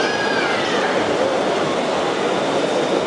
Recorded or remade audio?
recorded